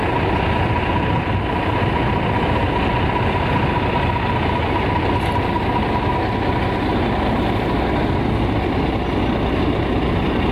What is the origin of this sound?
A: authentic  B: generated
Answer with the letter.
A